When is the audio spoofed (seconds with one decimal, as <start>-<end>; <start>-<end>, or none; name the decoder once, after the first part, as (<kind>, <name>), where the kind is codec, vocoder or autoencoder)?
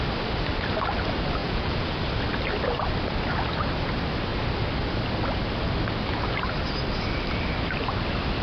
1.4-2.0 (vocoder, Vocos)